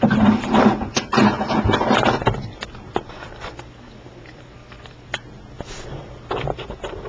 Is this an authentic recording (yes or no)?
yes